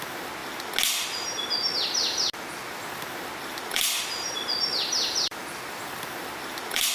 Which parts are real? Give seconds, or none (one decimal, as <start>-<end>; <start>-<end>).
0.0-3.4

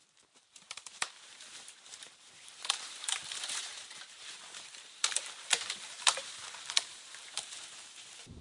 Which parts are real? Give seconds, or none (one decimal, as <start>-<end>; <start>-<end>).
none

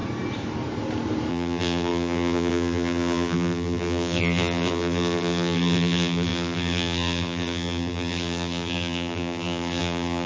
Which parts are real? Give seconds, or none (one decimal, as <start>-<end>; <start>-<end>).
0.0-1.3

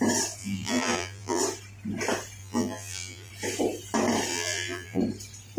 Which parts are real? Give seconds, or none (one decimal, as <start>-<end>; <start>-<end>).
0.0-0.4; 1.4-2.4; 3.3-4.3; 5.0-5.6

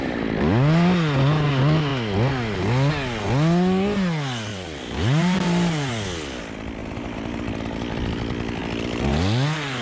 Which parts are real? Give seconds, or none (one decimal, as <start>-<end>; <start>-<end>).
0.0-4.5; 5.9-6.8; 7.4-9.8

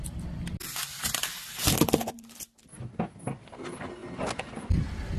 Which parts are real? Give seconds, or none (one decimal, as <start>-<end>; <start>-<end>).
0.0-5.2